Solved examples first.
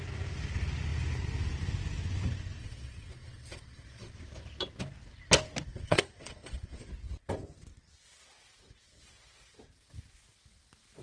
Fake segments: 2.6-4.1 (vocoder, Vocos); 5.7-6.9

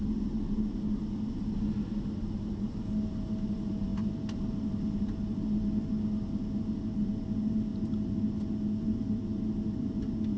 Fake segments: none

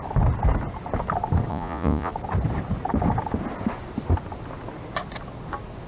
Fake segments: 1.5-2.1 (vocoder, Vocos)

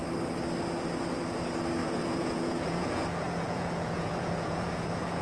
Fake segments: 1.8-5.2 (vocoder, Vocos)